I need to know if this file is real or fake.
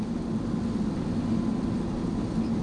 real